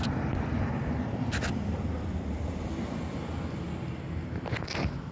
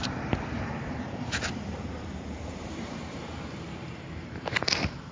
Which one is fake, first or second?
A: second